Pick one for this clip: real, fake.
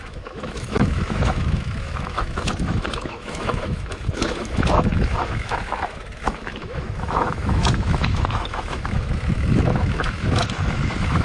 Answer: fake